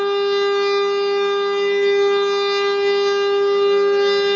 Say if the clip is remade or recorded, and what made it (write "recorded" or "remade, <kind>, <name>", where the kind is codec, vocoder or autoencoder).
recorded